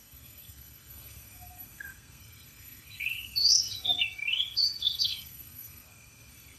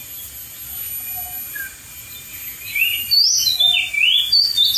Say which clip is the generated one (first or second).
first